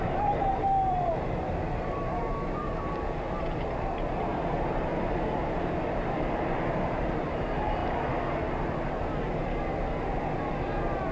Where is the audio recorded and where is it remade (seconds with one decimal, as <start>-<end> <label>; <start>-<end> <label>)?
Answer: 0.0-2.6 remade; 2.6-4.3 recorded; 4.3-9.4 remade; 9.4-10.5 recorded; 10.5-11.1 remade